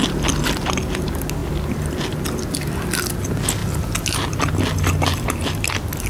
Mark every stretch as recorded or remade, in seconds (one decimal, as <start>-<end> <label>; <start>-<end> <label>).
0.0-6.1 recorded